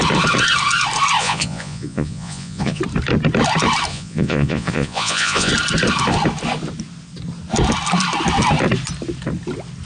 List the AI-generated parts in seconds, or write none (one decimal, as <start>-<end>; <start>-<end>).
1.2-2.8; 3.9-5.5